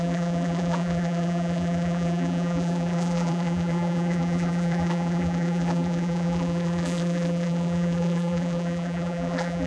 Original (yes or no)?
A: no